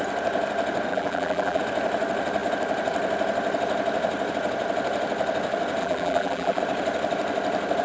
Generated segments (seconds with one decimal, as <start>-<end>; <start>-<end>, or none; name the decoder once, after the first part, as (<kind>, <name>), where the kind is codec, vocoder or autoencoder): 0.9-1.6 (vocoder, BigVGAN v2); 5.8-6.6